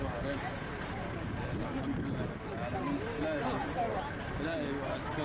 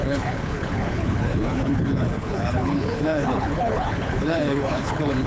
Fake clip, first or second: second